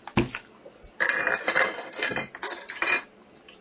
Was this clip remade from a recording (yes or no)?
no